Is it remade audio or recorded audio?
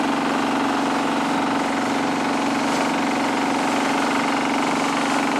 recorded